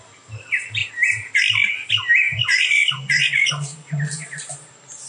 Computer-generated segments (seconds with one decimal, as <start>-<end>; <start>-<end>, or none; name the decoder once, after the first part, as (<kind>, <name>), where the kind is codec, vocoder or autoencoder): 2.3-3.5 (vocoder, Vocos)